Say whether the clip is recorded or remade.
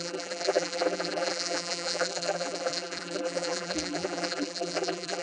remade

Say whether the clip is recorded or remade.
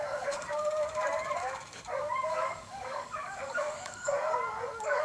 remade